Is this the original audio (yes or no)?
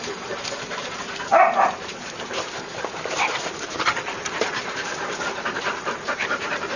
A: no